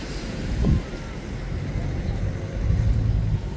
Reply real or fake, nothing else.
fake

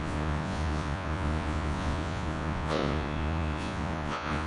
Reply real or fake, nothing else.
fake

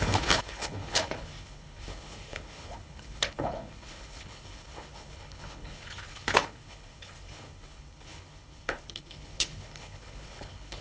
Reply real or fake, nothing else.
fake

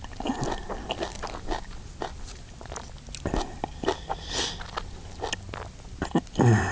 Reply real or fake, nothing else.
real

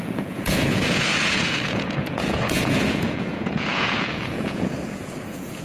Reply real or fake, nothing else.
fake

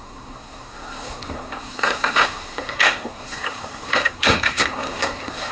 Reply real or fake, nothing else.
fake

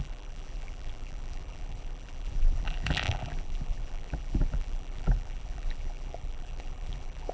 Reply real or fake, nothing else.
fake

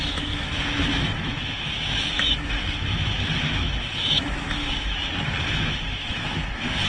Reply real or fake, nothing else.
fake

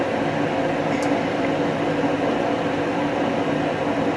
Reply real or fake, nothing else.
real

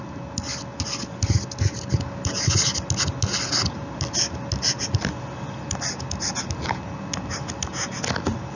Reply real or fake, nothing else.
real